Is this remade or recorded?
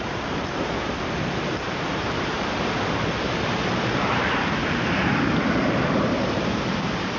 remade